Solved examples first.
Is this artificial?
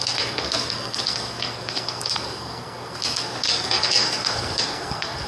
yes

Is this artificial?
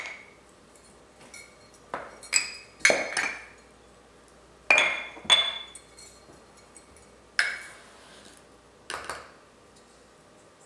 no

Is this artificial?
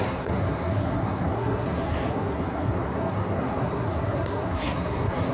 yes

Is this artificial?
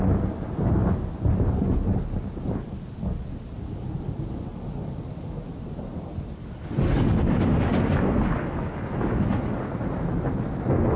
no